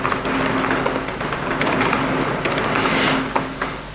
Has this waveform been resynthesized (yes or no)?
no